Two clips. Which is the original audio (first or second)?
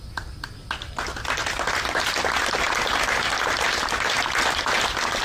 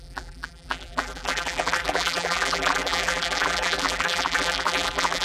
first